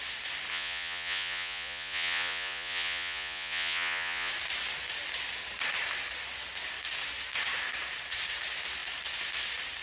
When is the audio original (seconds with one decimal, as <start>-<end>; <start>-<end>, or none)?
0.0-0.5; 4.3-9.8